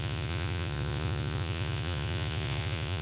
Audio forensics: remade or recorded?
remade